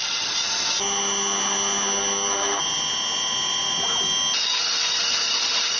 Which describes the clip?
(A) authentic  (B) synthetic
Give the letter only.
A